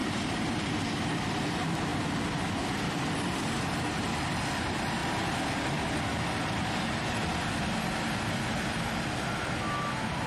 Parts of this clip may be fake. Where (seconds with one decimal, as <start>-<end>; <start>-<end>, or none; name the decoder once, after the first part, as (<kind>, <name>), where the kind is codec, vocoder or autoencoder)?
0.0-0.8 (vocoder, BigVGAN v2)